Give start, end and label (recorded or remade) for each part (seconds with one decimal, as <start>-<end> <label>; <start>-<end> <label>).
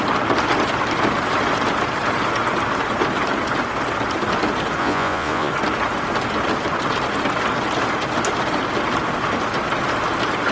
0.0-4.8 recorded; 4.8-5.5 remade; 5.5-10.5 recorded